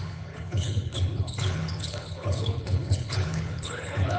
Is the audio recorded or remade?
remade